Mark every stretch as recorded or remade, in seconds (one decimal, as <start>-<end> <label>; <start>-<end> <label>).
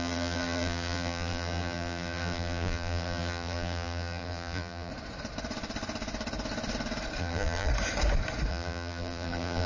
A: 0.0-4.9 remade; 4.9-7.2 recorded; 7.2-7.7 remade; 7.7-8.5 recorded; 8.5-9.7 remade